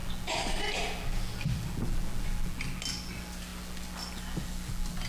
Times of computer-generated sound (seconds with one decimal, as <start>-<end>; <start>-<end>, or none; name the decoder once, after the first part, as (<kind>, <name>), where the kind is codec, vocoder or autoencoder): none